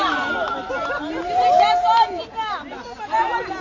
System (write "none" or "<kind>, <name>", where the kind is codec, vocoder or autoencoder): none